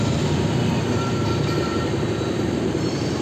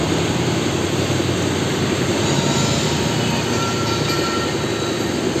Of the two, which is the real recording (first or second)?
second